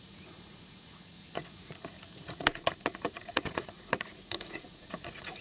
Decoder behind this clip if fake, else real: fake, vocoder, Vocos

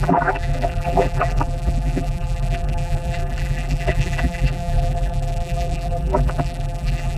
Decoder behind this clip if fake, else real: fake, vocoder, BigVGAN v2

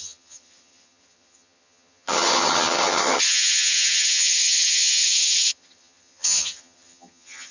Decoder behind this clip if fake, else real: fake, vocoder, HiFi-GAN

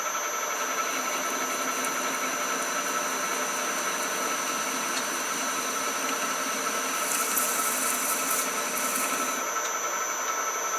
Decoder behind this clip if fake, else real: real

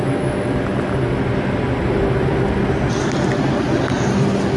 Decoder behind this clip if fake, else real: real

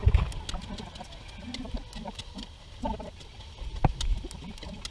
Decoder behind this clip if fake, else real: real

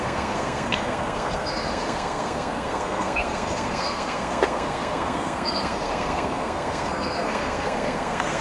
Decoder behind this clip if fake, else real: fake, codec, SNAC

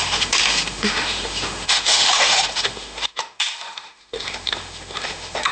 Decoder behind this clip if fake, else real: fake, autoencoder, DAC-VAE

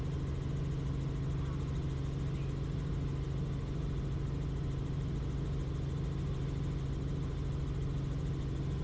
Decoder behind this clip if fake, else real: real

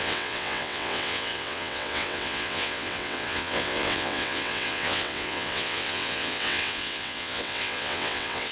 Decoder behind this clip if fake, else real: fake, vocoder, WaveNeXt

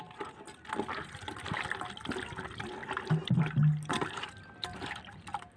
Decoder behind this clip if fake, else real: real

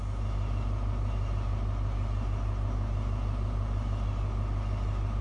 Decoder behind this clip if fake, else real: real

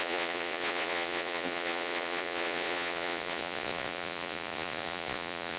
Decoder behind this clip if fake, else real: fake, vocoder, Vocos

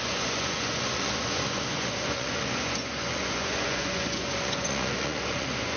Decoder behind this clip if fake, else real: fake, vocoder, Vocos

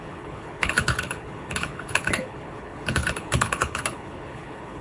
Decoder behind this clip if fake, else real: fake, codec, HILCodec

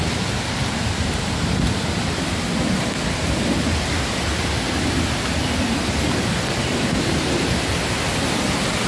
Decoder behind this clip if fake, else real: real